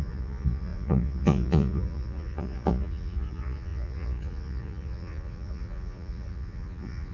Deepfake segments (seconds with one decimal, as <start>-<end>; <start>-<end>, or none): 0.0-7.1